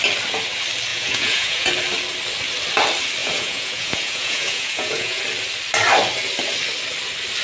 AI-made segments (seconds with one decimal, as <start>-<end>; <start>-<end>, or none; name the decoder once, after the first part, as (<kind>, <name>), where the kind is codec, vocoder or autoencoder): 0.9-1.7 (vocoder, Vocos); 3.2-5.2